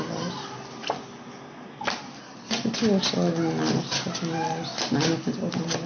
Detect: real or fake real